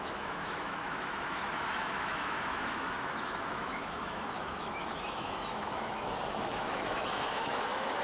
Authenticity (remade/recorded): remade